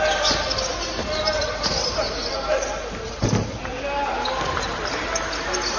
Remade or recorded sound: recorded